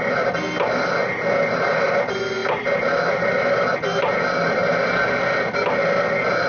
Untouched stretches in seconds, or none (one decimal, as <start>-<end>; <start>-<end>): 0.0-6.5